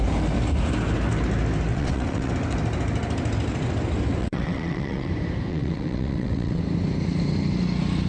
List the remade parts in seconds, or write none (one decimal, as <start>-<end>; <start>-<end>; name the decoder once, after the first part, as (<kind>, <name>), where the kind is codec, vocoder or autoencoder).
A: 1.7-2.3 (vocoder, WaveNeXt); 4.2-5.1; 5.5-6.6